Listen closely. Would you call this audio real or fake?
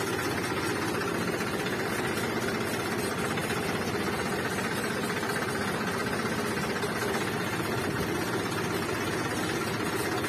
real